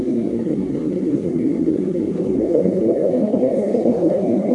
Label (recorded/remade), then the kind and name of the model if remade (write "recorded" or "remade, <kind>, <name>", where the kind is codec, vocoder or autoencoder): remade, codec, SNAC